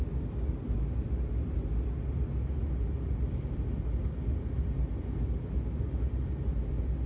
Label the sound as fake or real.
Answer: real